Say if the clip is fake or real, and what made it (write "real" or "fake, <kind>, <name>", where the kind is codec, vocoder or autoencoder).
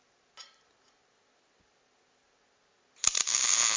real